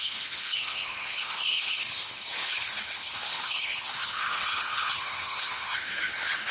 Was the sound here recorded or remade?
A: remade